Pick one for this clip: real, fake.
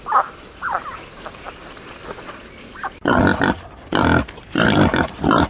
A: real